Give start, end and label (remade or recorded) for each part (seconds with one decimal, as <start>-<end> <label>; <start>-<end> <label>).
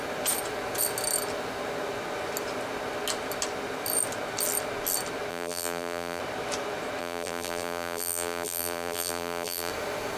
0.0-5.3 recorded; 5.3-6.2 remade; 6.2-7.0 recorded; 7.0-9.7 remade; 9.7-10.2 recorded